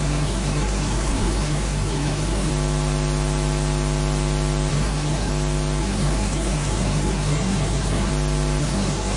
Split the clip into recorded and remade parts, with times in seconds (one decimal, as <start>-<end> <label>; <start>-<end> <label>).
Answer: 0.0-2.5 remade; 2.5-4.7 recorded; 4.7-5.3 remade; 5.3-5.8 recorded; 5.8-8.1 remade; 8.1-8.6 recorded; 8.6-9.2 remade